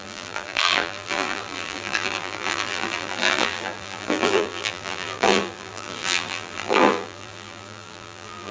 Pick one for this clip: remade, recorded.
remade